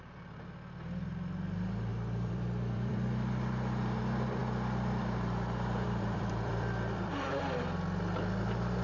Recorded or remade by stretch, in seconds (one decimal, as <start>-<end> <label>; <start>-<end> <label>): 0.0-1.9 recorded; 1.9-4.0 remade; 4.0-4.4 recorded; 4.4-7.4 remade; 7.4-8.8 recorded